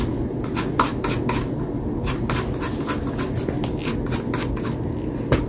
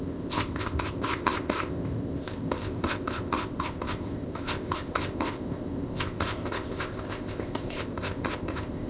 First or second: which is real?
first